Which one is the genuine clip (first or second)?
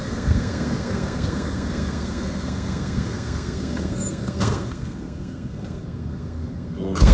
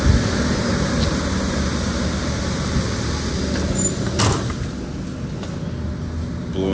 second